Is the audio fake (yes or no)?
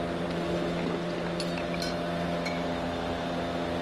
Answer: no